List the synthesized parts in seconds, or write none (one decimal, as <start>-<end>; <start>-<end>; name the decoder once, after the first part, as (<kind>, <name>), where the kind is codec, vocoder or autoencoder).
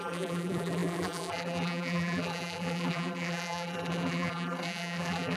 0.0-5.4 (vocoder, BigVGAN v2)